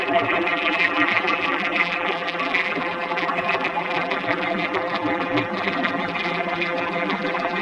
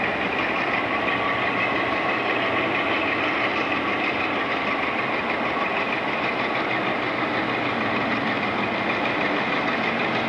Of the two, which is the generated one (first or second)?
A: first